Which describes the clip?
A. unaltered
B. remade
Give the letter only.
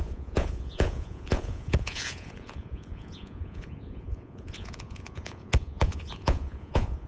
B